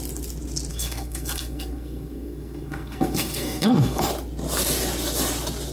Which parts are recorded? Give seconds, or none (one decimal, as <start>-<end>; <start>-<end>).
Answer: 0.0-0.7; 4.1-5.7